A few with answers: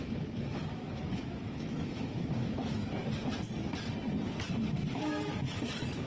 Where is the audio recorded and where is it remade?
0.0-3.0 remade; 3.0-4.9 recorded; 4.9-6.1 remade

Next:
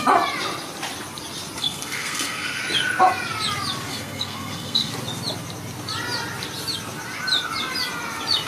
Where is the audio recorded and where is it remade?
0.0-1.6 recorded; 1.6-2.6 remade; 2.6-3.9 recorded; 3.9-4.9 remade; 4.9-8.5 recorded